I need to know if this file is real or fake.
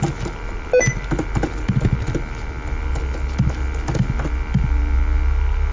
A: real